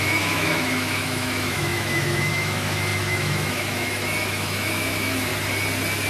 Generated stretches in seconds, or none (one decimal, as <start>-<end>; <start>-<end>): 0.0-5.3